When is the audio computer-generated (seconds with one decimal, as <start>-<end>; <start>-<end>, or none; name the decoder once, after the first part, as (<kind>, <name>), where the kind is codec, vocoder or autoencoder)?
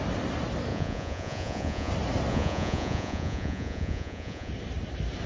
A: 0.7-1.9 (vocoder, Vocos); 2.3-4.5